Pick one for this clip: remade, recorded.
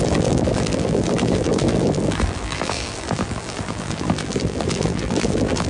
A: remade